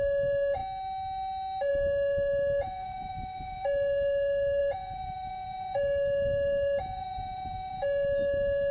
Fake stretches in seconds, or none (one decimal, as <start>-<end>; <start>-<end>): 0.0-0.6; 1.7-8.7